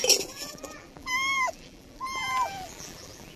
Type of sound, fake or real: fake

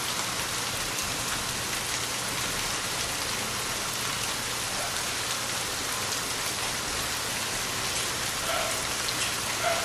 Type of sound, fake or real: real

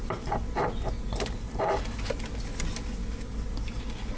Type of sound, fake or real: real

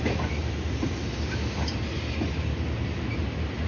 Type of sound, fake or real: real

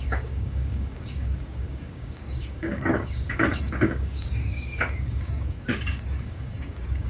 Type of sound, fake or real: fake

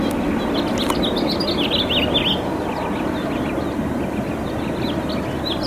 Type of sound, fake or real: real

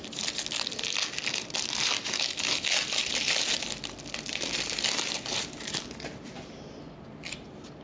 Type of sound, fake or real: real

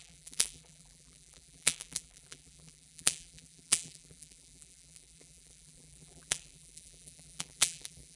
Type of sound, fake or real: fake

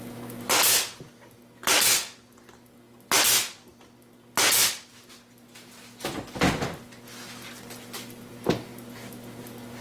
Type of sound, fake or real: real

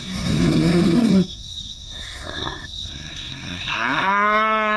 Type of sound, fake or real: fake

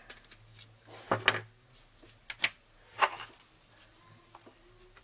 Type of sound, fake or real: real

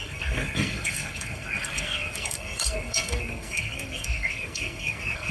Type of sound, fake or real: fake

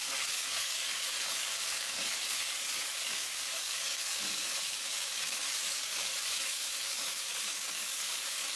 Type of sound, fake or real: fake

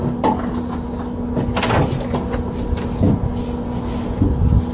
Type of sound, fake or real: real